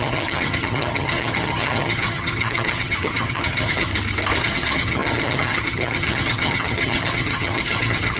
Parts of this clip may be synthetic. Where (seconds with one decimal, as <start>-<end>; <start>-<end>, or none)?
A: 0.0-3.9; 4.4-8.2

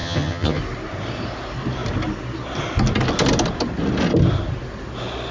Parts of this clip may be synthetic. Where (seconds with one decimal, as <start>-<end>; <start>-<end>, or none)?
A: 0.0-0.6

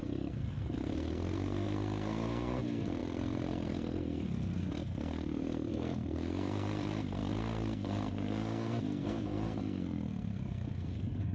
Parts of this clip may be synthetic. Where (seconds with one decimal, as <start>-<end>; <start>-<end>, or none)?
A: 0.0-11.3